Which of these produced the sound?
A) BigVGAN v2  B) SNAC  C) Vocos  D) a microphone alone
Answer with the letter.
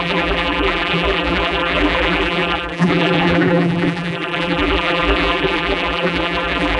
A